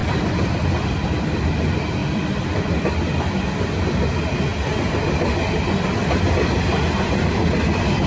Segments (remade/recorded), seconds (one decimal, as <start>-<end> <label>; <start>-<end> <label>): 0.0-1.6 remade; 1.6-2.0 recorded; 2.0-3.4 remade; 3.4-8.1 recorded